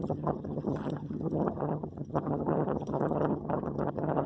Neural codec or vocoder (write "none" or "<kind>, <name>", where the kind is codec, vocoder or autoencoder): vocoder, HiFi-GAN